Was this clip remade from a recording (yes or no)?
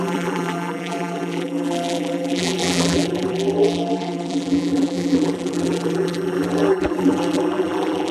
yes